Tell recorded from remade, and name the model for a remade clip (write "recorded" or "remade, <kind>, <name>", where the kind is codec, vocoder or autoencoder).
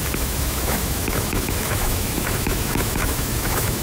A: remade, autoencoder, DAC-VAE